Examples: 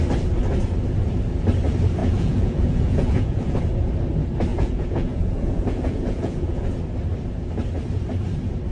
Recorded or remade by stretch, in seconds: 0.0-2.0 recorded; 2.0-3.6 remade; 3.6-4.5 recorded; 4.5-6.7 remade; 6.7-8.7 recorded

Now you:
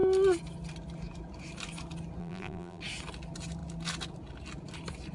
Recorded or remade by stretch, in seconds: 0.0-2.2 recorded; 2.2-2.8 remade; 2.8-5.1 recorded

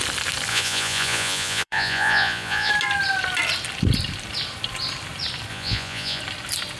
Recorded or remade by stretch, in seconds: 0.0-0.5 recorded; 0.5-2.7 remade; 2.7-5.5 recorded; 5.5-6.2 remade; 6.2-6.8 recorded

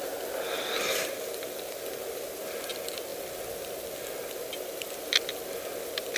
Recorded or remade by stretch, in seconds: 0.0-6.2 recorded